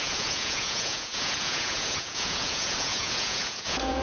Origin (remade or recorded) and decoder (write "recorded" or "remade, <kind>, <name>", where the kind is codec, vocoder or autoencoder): remade, vocoder, Vocos